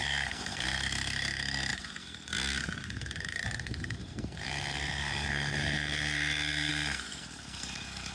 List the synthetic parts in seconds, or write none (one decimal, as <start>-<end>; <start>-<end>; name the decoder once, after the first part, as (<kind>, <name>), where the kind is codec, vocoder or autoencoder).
0.0-8.1 (codec, SNAC)